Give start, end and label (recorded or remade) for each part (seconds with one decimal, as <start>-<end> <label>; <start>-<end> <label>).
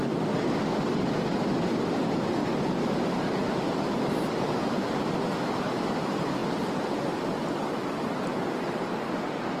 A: 0.0-2.4 recorded; 2.4-5.0 remade; 5.0-9.6 recorded